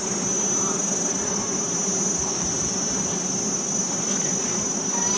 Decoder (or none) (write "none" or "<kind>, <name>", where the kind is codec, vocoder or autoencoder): none